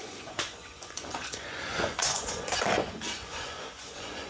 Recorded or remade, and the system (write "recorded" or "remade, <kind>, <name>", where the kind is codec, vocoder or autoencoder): remade, vocoder, Vocos